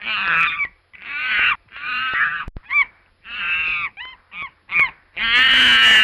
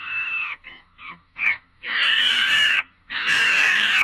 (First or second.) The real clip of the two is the first